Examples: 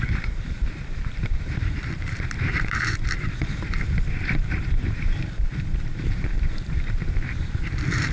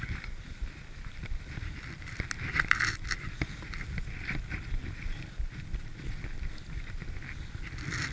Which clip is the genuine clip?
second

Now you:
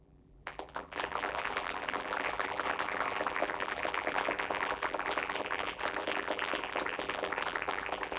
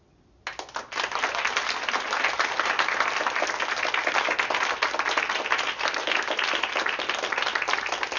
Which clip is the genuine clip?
second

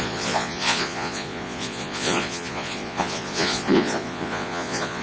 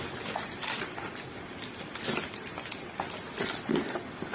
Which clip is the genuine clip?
second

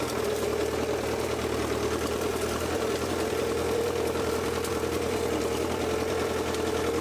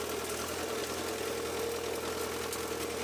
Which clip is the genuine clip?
second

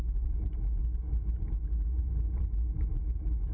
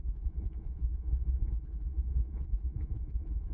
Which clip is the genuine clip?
first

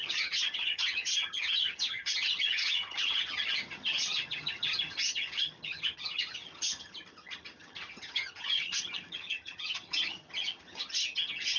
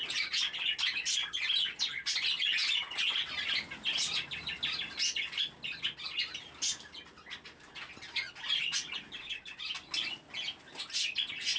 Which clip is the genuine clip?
second